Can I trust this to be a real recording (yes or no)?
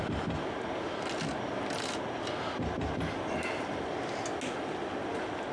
yes